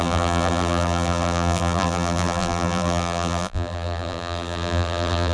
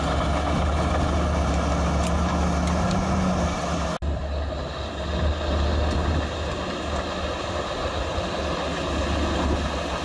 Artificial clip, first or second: first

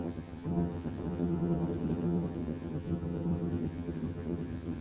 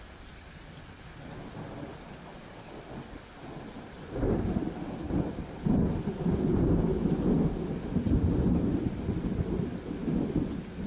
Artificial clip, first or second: first